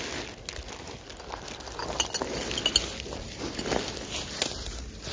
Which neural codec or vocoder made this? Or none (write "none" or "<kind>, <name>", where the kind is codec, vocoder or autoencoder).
none